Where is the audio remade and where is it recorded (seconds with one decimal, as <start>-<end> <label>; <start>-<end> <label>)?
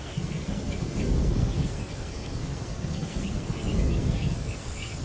0.0-5.0 remade